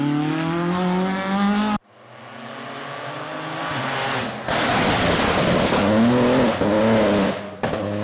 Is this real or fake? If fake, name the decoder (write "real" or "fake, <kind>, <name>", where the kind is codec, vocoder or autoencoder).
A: real